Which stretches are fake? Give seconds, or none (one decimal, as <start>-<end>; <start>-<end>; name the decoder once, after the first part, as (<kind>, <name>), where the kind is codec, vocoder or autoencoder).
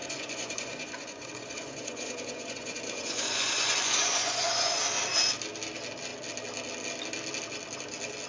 0.0-4.8 (vocoder, Vocos)